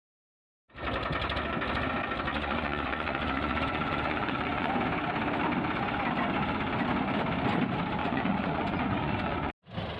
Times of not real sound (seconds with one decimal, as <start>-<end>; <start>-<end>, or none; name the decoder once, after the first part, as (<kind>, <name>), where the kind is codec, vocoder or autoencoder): 2.3-4.7 (vocoder, Vocos); 8.0-9.5